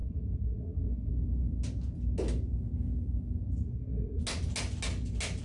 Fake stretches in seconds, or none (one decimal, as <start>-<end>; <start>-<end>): 0.0-1.1; 3.6-4.2